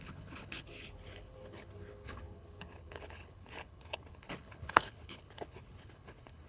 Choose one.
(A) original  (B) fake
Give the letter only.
B